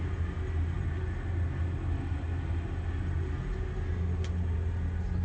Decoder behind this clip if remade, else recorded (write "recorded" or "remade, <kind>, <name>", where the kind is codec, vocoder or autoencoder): recorded